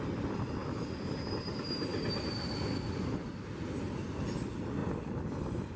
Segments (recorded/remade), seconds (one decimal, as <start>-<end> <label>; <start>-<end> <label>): 0.0-0.6 recorded; 0.6-1.3 remade; 1.3-4.8 recorded; 4.8-5.8 remade